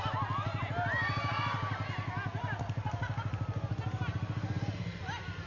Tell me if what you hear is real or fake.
real